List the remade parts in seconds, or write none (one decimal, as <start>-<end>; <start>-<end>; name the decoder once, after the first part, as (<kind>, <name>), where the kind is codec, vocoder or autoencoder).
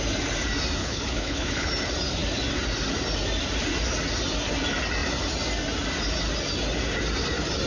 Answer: 0.8-1.7 (codec, HILCodec)